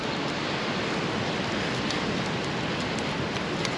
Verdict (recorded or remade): recorded